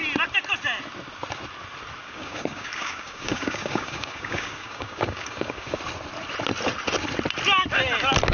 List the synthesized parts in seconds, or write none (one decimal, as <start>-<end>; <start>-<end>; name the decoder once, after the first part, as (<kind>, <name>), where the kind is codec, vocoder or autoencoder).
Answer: 2.0-5.8 (codec, DAC)